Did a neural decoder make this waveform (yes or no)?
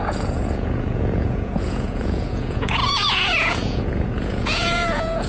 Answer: yes